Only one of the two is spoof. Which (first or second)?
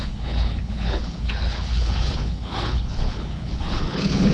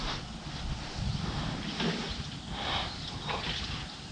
first